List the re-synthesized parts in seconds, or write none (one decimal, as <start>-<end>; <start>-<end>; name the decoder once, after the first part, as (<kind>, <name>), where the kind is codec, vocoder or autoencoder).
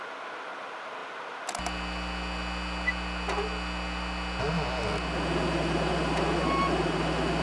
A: none